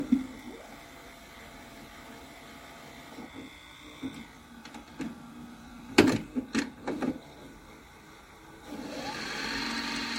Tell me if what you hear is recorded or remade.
recorded